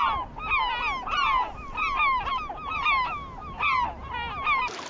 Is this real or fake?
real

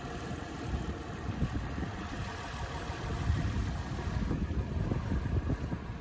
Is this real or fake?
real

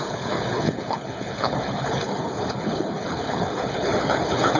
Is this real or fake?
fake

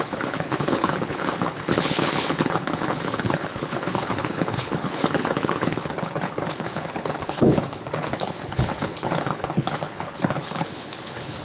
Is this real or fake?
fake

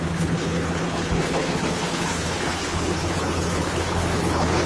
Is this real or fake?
fake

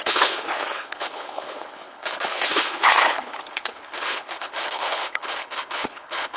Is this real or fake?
fake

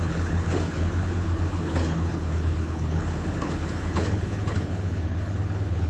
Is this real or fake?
fake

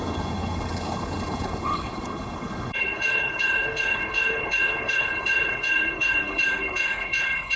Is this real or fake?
fake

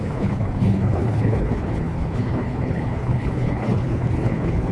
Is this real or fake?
fake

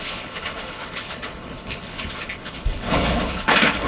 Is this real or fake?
fake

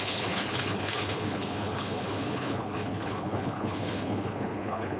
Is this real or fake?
fake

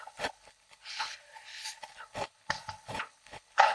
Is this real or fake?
fake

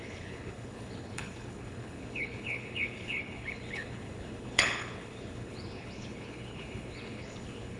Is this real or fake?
fake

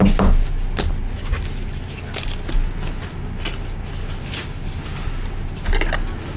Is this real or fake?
real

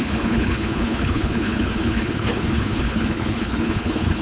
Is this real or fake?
fake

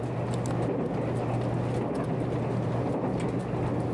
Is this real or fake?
real